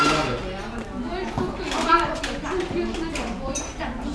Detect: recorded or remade recorded